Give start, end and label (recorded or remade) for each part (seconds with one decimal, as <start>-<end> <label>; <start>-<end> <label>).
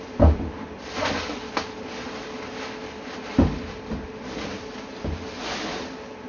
0.0-1.4 remade; 1.4-5.0 recorded; 5.0-6.3 remade